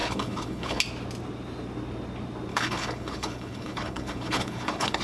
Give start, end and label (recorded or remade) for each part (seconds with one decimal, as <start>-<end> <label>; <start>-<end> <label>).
0.0-0.8 remade; 0.8-2.5 recorded; 2.5-5.0 remade